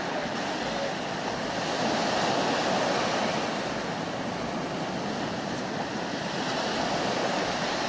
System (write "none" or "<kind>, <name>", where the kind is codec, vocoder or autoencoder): none